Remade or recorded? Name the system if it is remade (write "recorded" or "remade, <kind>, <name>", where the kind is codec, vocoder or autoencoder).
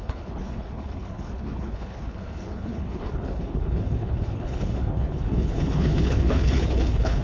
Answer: remade, codec, HILCodec